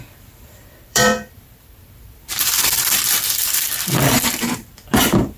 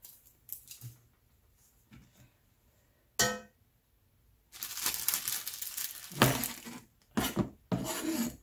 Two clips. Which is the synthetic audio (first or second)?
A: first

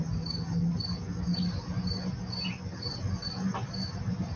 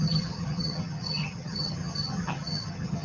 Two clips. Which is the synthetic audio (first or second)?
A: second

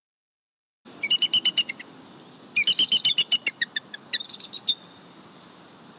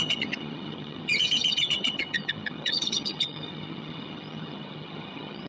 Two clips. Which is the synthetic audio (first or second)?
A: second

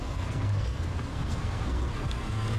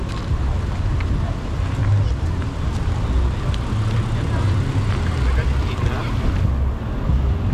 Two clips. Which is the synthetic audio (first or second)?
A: first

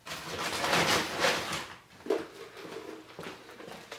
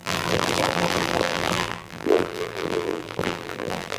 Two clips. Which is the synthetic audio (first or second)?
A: second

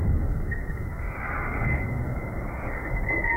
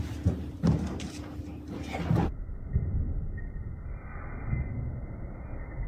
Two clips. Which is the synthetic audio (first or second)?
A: first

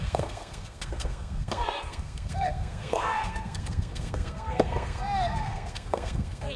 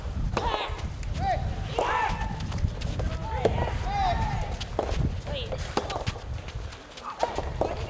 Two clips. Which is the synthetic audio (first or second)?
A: first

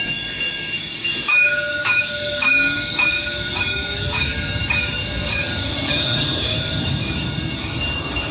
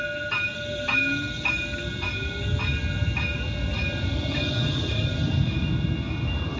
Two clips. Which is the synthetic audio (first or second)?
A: first